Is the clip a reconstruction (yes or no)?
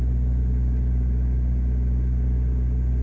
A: no